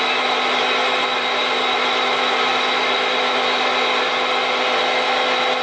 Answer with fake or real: real